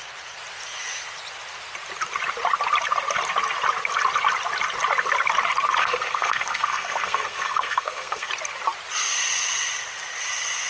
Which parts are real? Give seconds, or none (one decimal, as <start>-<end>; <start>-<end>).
0.0-5.8; 8.3-10.7